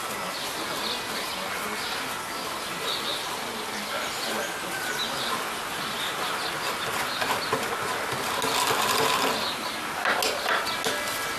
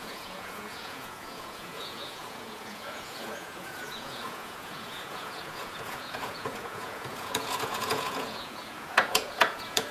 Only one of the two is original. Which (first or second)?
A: first